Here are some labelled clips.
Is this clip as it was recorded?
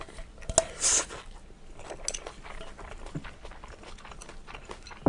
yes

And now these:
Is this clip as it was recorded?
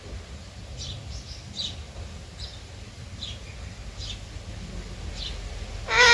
yes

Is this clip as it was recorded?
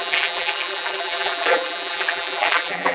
no